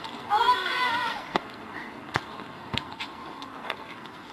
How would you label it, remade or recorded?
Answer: remade